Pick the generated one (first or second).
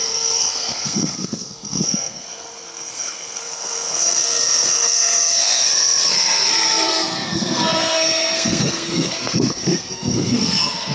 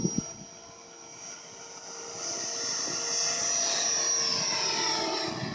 first